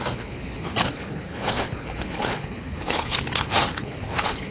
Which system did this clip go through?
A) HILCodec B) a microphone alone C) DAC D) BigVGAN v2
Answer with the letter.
A